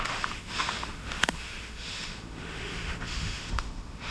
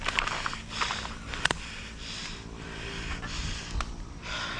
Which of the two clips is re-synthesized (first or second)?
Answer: first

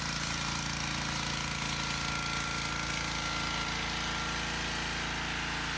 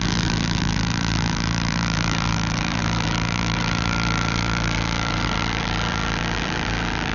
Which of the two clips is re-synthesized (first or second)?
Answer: second